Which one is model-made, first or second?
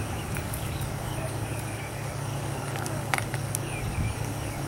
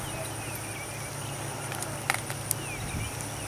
first